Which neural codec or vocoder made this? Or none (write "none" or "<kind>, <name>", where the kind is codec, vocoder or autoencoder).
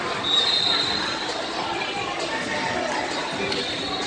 none